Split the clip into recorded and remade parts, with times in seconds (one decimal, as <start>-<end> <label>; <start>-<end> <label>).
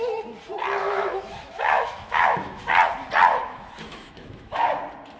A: 0.0-0.8 recorded; 0.8-2.6 remade; 2.6-3.4 recorded; 3.4-4.7 remade; 4.7-5.2 recorded